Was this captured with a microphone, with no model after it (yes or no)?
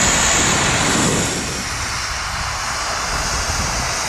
yes